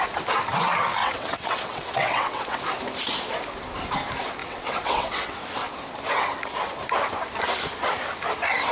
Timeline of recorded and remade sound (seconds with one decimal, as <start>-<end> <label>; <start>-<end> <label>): 0.0-1.0 recorded; 1.0-2.6 remade; 2.6-4.4 recorded; 4.4-5.4 remade; 5.4-8.7 recorded